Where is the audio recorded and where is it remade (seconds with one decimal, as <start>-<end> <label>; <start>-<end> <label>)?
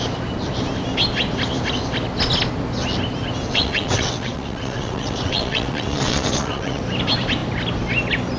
0.0-3.5 recorded; 3.5-6.8 remade; 6.8-8.4 recorded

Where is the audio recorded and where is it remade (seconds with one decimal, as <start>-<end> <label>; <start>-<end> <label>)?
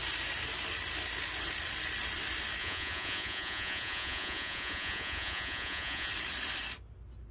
0.0-2.6 recorded; 2.6-6.1 remade; 6.1-7.3 recorded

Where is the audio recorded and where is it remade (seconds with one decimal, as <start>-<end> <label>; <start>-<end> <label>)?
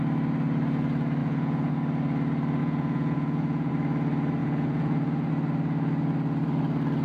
0.0-1.2 recorded; 1.2-1.7 remade; 1.7-2.6 recorded; 2.6-3.7 remade; 3.7-4.4 recorded; 4.4-5.3 remade; 5.3-7.0 recorded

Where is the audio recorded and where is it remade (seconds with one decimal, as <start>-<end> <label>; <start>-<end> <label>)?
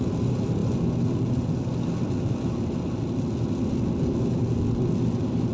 0.0-5.5 recorded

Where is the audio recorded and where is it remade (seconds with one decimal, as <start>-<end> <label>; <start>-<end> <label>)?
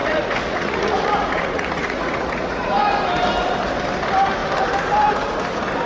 0.0-2.7 remade; 2.7-5.9 recorded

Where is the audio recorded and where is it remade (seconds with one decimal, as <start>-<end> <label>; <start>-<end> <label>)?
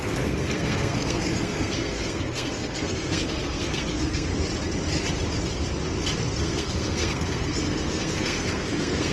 0.0-4.3 remade; 4.3-6.4 recorded; 6.4-9.1 remade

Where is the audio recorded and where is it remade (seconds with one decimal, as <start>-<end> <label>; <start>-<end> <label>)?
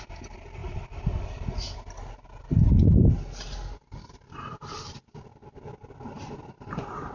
0.0-7.1 recorded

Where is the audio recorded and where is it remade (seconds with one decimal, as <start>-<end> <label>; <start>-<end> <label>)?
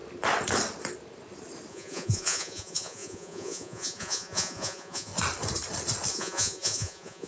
0.0-1.7 recorded; 1.7-5.1 remade; 5.1-6.1 recorded; 6.1-7.3 remade